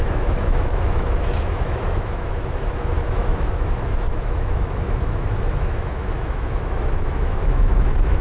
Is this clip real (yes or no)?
no